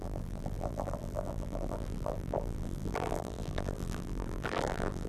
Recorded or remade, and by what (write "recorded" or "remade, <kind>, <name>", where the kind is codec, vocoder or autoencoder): remade, vocoder, BigVGAN v2